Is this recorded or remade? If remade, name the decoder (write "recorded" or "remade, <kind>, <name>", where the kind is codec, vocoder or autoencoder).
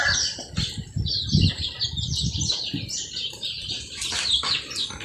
remade, vocoder, BigVGAN v2